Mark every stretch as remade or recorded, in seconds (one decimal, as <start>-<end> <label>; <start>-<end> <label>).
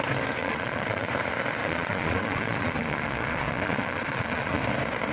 0.0-0.4 recorded; 0.4-1.1 remade; 1.1-1.6 recorded; 1.6-4.6 remade; 4.6-5.1 recorded